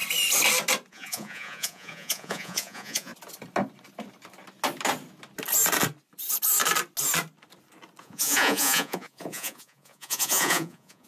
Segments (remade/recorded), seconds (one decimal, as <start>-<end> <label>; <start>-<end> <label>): 0.0-0.9 recorded; 0.9-3.1 remade; 3.1-8.0 recorded; 8.0-11.1 remade